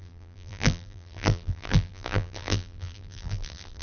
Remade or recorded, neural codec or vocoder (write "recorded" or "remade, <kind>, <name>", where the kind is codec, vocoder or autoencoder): remade, vocoder, BigVGAN v2